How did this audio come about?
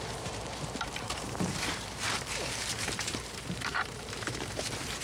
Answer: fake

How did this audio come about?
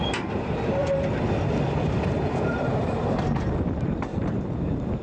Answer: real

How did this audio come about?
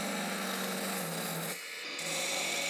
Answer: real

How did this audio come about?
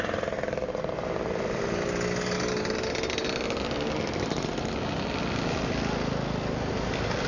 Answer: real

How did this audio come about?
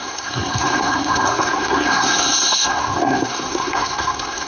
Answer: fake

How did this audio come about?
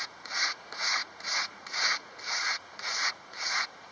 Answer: fake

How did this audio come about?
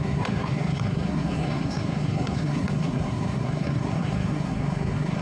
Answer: fake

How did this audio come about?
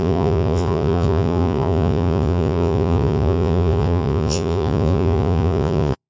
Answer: fake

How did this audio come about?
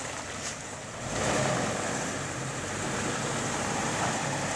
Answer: real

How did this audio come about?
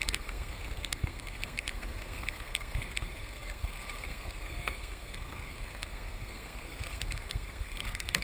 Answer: fake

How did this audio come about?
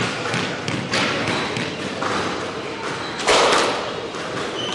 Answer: real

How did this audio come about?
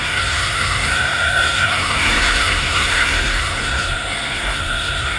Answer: fake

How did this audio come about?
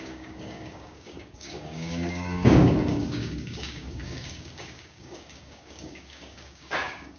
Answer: fake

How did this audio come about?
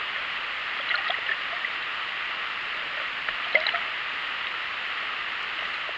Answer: real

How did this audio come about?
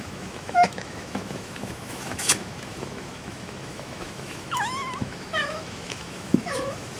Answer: fake